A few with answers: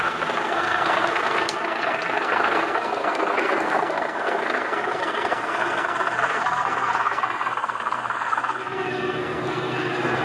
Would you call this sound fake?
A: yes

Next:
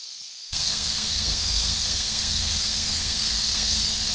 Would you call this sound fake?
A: yes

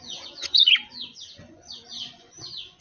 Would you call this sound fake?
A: yes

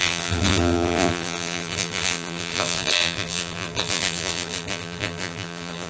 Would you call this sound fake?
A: yes